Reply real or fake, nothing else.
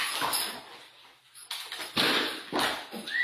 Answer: real